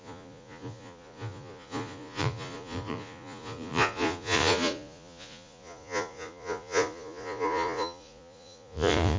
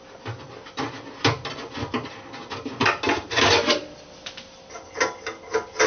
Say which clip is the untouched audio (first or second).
second